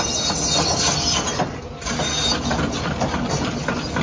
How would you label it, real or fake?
real